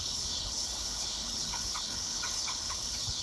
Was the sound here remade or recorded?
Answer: remade